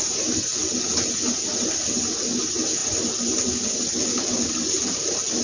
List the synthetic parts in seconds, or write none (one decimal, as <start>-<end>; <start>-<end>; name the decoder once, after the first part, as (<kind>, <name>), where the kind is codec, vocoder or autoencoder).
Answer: none